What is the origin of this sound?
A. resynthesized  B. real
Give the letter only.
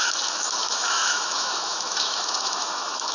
A